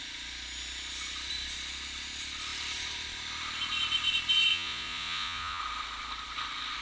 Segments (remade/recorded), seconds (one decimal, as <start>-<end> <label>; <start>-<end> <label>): 0.0-4.5 recorded; 4.5-5.6 remade; 5.6-6.8 recorded